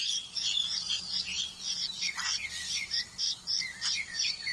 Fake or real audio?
fake